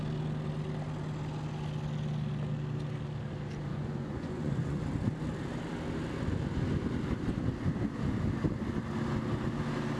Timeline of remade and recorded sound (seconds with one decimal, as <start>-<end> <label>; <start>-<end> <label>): 0.0-3.7 recorded; 3.7-4.8 remade; 4.8-10.0 recorded